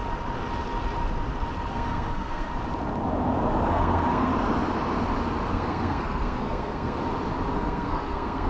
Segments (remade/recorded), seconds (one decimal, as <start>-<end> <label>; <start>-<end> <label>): 0.0-1.7 recorded; 1.7-2.5 remade; 2.5-3.7 recorded; 3.7-4.3 remade; 4.3-5.5 recorded; 5.5-7.0 remade; 7.0-7.5 recorded; 7.5-8.5 remade